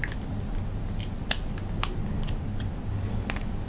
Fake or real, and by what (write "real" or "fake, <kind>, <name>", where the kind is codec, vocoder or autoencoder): real